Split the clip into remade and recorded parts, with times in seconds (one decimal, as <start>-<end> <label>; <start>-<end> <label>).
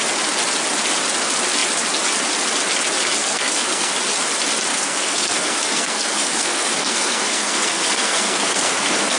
0.0-3.2 recorded; 3.2-3.9 remade; 3.9-4.7 recorded; 4.7-9.2 remade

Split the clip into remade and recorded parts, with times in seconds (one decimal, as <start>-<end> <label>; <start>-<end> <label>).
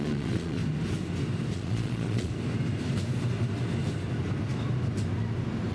0.0-0.6 remade; 0.6-1.5 recorded; 1.5-2.3 remade; 2.3-5.7 recorded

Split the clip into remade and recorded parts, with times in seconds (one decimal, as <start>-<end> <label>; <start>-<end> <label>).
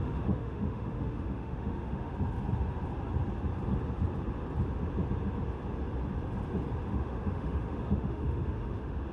0.0-2.1 remade; 2.1-6.9 recorded; 6.9-9.1 remade